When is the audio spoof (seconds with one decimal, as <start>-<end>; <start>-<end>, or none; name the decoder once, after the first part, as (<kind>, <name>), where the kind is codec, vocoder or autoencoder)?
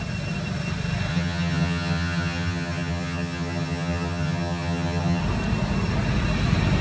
1.1-5.2 (vocoder, HiFi-GAN)